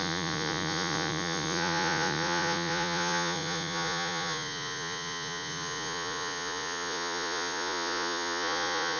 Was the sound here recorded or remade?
remade